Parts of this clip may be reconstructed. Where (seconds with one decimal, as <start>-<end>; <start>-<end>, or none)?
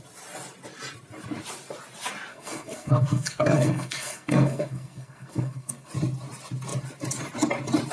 2.3-5.9